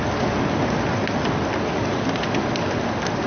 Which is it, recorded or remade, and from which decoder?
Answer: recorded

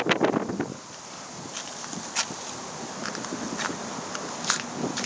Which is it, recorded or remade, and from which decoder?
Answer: recorded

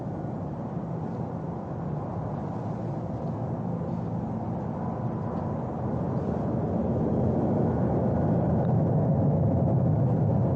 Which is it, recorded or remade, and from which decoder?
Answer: recorded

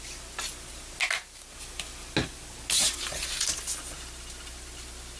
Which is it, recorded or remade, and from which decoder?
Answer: recorded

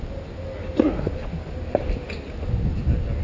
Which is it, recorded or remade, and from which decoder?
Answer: recorded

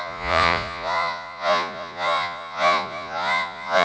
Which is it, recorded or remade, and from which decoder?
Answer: remade, vocoder, Vocos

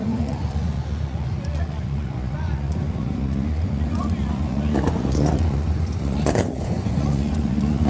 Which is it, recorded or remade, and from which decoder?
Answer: remade, vocoder, Vocos